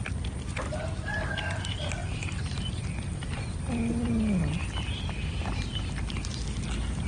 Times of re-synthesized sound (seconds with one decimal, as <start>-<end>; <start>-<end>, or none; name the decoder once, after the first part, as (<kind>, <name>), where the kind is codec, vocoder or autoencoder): 2.0-3.7 (vocoder, BigVGAN v2)